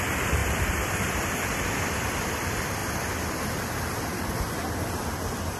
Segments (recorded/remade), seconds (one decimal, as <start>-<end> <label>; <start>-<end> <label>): 0.0-0.4 recorded; 0.4-1.2 remade; 1.2-5.6 recorded